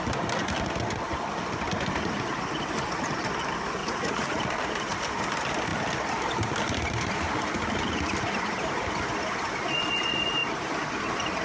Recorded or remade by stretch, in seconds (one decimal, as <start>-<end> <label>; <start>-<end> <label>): 0.0-3.8 recorded; 3.8-4.4 remade; 4.4-11.4 recorded